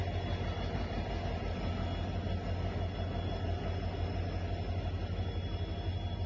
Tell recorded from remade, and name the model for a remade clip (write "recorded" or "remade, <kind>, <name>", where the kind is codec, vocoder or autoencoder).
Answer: recorded